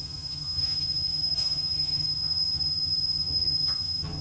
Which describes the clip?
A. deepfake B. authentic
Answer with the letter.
A